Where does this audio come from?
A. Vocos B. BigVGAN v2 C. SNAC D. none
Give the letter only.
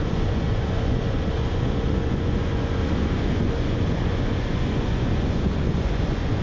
A